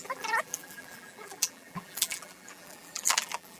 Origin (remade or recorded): remade